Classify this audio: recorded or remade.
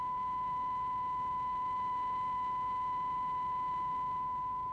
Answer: recorded